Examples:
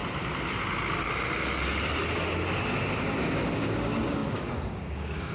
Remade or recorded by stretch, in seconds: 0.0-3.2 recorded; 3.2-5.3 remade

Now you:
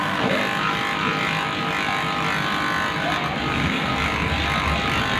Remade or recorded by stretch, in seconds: 0.0-0.4 remade; 0.4-3.5 recorded; 3.5-3.9 remade; 3.9-5.2 recorded

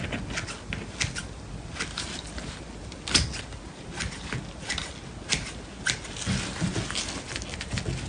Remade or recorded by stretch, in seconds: 0.0-8.1 recorded

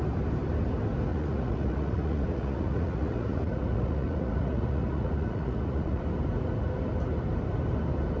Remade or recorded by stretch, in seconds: 0.0-1.1 recorded; 1.1-6.0 remade; 6.0-8.2 recorded